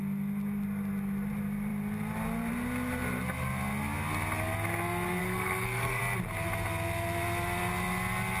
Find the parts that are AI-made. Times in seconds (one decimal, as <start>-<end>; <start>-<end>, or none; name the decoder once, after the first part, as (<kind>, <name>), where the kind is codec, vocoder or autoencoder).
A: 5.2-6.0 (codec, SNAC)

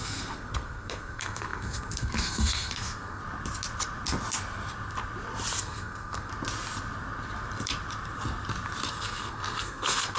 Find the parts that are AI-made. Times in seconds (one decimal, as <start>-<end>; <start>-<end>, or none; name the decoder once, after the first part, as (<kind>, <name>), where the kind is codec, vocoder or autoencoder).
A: 0.0-3.2 (codec, SNAC); 5.6-6.3; 8.9-10.2

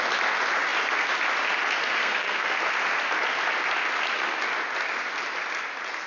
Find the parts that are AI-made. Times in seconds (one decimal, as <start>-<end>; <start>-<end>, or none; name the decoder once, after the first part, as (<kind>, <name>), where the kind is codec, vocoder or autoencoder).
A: 2.0-2.6 (codec, SNAC)

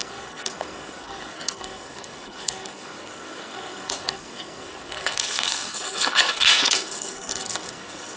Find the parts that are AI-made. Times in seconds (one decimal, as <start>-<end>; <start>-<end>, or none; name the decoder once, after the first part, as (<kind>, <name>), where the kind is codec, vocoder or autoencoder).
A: 0.0-8.2 (codec, SNAC)

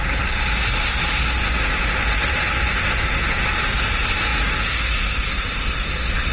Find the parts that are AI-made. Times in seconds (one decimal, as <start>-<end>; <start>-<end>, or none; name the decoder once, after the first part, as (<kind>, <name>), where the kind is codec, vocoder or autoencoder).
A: none